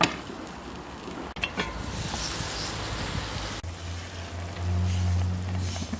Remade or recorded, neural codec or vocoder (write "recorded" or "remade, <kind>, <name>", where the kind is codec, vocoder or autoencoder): recorded